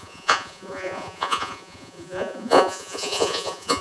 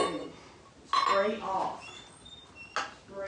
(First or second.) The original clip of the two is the second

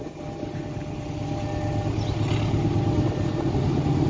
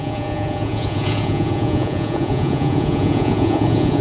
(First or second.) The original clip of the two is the first